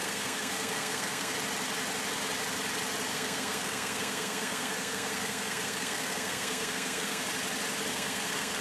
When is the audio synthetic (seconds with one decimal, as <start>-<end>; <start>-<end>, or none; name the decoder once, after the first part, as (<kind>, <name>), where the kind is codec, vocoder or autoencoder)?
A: 0.0-1.3 (codec, SNAC); 3.1-7.2; 7.9-8.6